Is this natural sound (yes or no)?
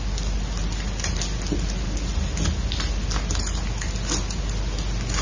yes